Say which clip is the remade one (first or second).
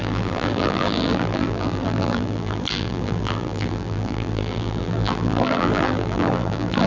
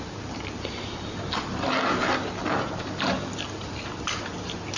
first